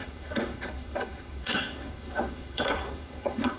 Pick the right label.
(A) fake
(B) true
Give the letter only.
A